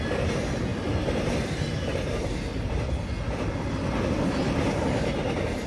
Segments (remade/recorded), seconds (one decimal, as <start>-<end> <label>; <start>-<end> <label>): 0.0-5.7 recorded